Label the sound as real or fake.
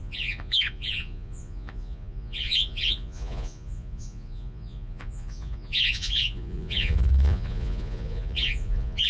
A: fake